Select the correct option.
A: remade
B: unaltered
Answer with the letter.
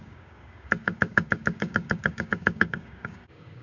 A